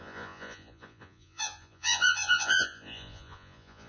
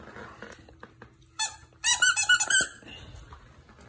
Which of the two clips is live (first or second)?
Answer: second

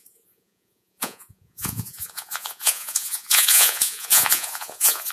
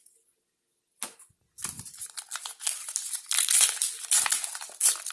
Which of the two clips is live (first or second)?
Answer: second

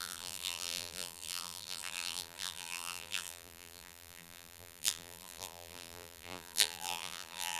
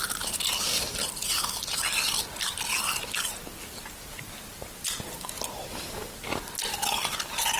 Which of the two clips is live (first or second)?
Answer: second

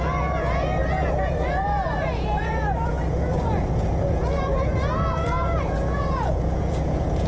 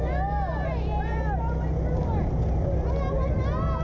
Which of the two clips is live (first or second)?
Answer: second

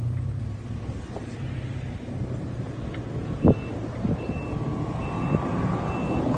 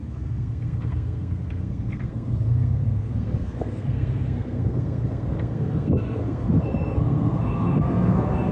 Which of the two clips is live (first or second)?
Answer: first